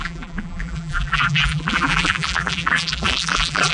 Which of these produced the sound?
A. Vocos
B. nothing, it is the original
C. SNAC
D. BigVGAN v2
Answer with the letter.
D